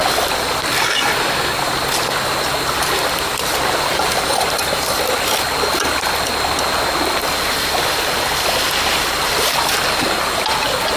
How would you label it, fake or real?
real